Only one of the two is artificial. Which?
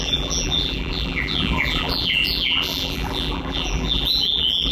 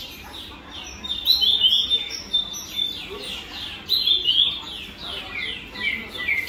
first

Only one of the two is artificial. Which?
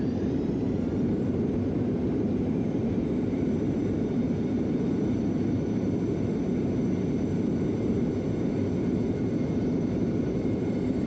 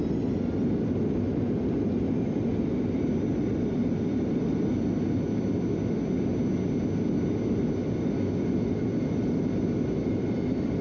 first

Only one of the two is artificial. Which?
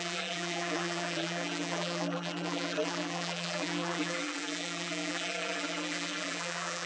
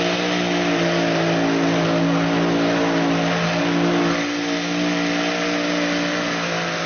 first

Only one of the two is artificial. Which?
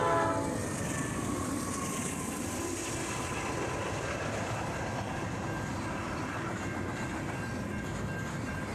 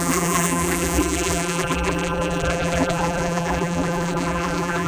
second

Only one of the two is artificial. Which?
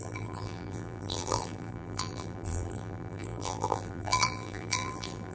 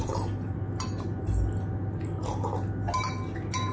first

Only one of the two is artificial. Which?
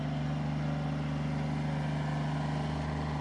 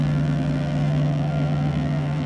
second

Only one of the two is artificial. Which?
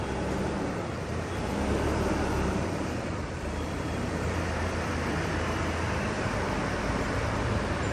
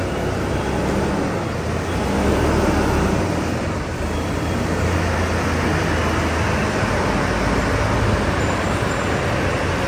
first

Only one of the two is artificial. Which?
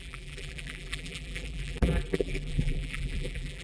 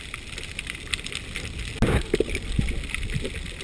first